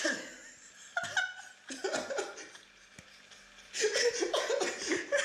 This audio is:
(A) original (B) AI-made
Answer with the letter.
A